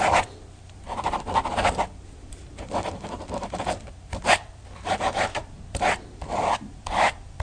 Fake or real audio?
fake